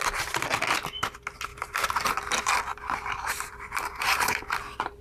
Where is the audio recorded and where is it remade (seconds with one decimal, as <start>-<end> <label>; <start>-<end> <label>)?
0.0-1.5 recorded; 1.5-2.1 remade; 2.1-2.7 recorded; 2.7-4.4 remade; 4.4-5.0 recorded